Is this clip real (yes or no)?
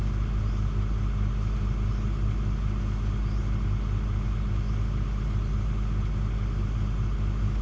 yes